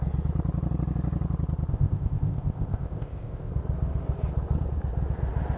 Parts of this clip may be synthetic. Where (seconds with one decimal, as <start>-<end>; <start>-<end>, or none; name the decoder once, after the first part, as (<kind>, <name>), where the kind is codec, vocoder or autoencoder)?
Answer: 1.7-3.5 (codec, ZipCodec)